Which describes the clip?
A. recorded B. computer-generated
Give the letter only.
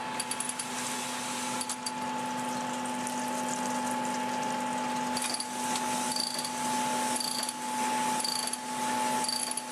A